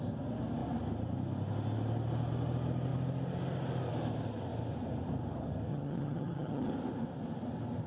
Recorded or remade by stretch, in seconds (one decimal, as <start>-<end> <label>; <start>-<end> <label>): 0.0-5.7 recorded; 5.7-6.7 remade; 6.7-7.9 recorded